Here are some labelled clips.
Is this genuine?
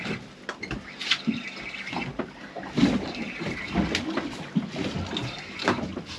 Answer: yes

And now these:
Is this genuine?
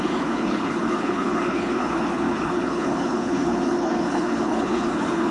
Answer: no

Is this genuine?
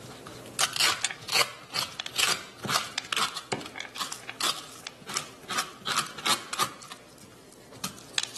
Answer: yes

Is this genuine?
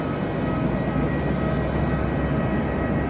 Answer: yes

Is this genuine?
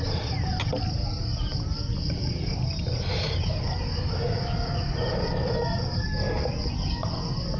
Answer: yes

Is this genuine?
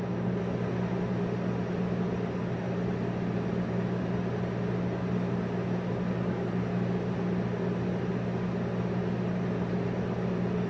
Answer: yes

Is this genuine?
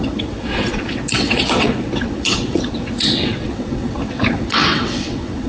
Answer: no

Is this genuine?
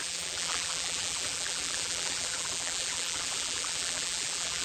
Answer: no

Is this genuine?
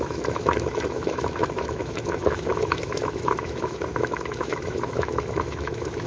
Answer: no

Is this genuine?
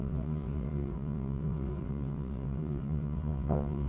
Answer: no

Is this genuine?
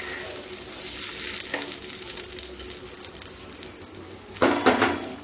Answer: yes